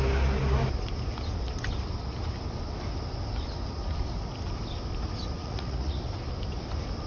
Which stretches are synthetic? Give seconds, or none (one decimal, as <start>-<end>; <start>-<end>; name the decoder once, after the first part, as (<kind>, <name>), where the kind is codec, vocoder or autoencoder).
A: 5.4-6.0 (vocoder, Vocos)